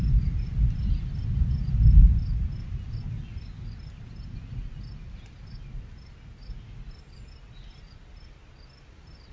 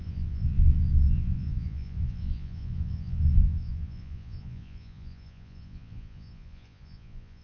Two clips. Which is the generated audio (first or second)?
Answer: second